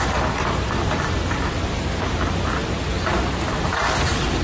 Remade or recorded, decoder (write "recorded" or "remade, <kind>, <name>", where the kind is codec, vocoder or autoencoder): remade, vocoder, BigVGAN v2